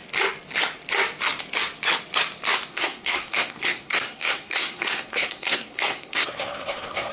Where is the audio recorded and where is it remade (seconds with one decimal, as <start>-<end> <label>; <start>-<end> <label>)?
0.0-2.7 recorded; 2.7-7.1 remade